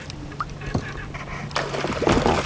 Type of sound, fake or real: real